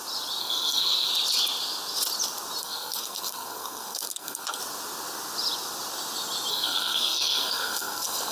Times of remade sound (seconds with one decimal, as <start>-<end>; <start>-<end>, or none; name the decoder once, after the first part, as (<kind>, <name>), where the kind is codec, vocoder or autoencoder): 0.4-1.1 (codec, SNAC); 2.6-4.6; 6.5-8.3